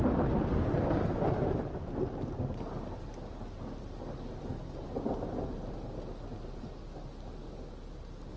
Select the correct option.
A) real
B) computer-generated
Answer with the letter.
A